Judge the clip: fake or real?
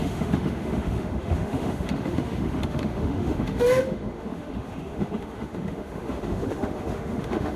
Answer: fake